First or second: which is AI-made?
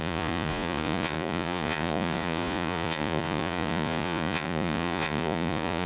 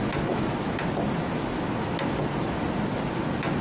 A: first